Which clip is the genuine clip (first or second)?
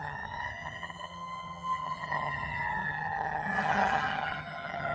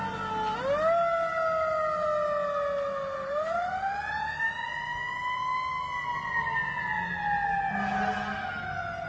second